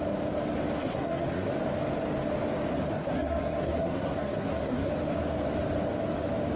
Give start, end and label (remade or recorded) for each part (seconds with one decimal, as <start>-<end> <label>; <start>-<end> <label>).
0.0-0.8 recorded; 0.8-1.5 remade; 1.5-2.9 recorded; 2.9-4.9 remade; 4.9-6.6 recorded